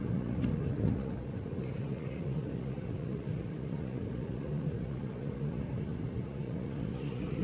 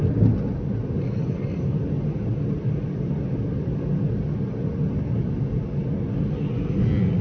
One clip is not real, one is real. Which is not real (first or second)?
first